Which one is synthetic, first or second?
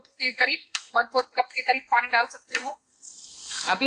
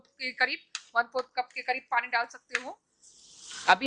first